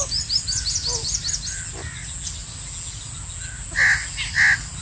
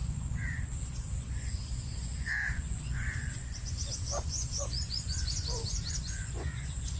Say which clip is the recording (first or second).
first